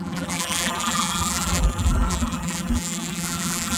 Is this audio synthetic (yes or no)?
yes